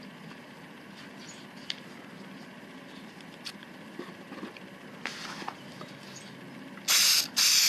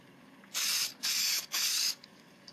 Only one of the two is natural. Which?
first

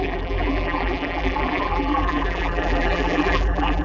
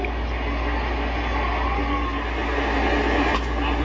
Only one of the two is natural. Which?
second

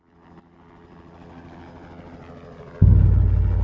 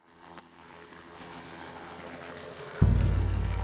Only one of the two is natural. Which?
first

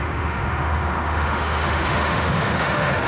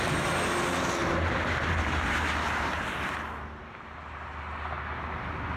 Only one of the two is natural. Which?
second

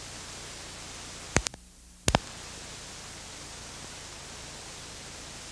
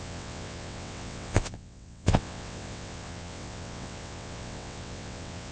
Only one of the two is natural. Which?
first